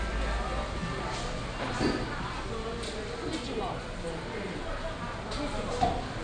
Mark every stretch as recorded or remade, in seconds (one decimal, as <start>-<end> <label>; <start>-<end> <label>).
0.0-6.2 recorded